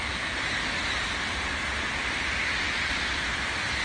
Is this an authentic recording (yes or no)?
yes